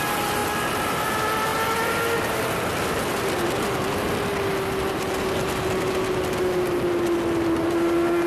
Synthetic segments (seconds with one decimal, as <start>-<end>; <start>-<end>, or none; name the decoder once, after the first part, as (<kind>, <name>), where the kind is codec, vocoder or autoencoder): none